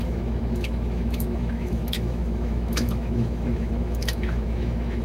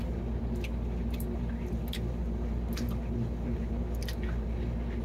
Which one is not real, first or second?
first